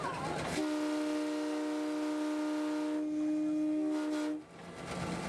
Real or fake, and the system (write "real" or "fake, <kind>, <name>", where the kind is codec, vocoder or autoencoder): real